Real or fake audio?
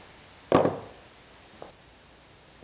real